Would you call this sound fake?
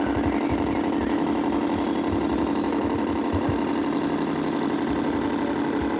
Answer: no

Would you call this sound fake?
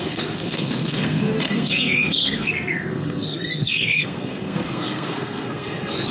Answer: yes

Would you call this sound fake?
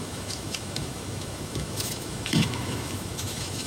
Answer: yes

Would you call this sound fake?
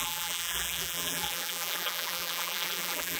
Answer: yes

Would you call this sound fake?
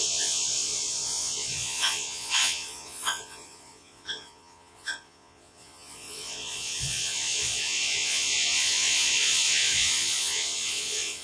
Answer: yes